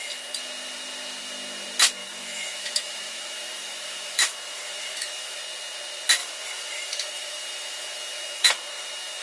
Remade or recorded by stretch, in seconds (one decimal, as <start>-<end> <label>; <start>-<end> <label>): 0.0-2.0 recorded; 2.0-5.4 remade; 5.4-6.2 recorded; 6.2-8.5 remade; 8.5-9.2 recorded